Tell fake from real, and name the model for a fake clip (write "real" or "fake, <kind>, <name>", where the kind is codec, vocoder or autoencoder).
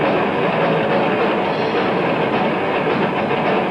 real